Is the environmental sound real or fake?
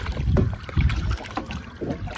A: real